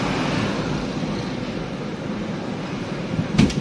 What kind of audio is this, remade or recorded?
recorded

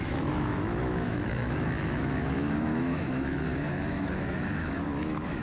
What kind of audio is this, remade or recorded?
remade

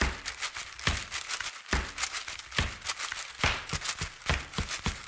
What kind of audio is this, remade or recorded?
recorded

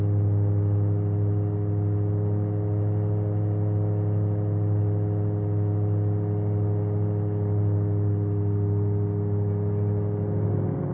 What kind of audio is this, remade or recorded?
recorded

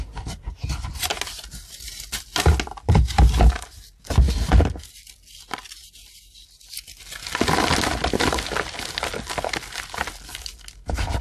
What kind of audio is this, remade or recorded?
recorded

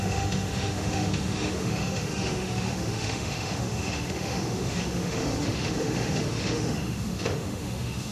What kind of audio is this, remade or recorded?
remade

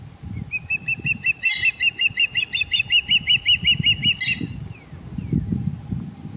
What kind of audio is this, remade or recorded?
recorded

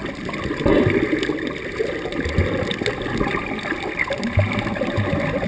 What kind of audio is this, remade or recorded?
recorded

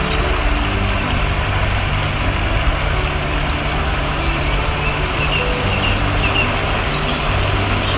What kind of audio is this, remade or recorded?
recorded